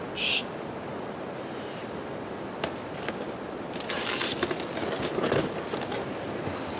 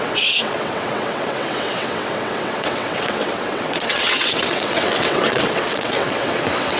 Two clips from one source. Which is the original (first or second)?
first